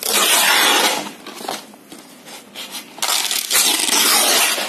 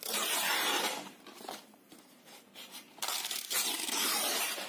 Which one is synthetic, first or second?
second